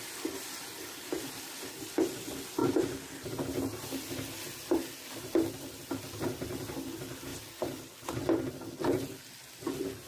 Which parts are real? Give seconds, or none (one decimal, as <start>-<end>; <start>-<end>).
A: 0.0-7.3; 8.7-10.1